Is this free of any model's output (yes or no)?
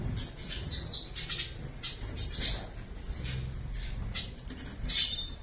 yes